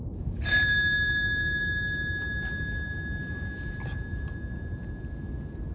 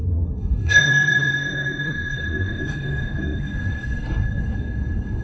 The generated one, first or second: second